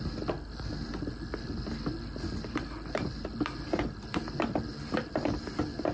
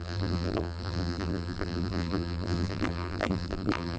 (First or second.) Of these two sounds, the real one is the first